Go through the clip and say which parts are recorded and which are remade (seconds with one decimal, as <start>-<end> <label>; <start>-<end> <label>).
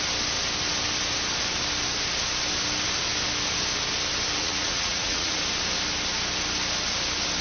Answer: 0.0-4.4 recorded; 4.4-5.4 remade; 5.4-7.4 recorded